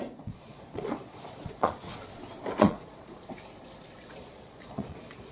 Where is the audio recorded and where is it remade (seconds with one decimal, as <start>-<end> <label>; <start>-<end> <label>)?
0.0-1.9 remade; 1.9-2.6 recorded; 2.6-3.2 remade; 3.2-4.0 recorded; 4.0-5.3 remade

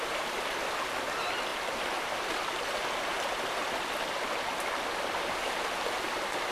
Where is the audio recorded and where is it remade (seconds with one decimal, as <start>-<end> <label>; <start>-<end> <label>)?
0.0-6.5 recorded